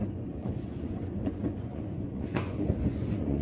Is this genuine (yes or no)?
no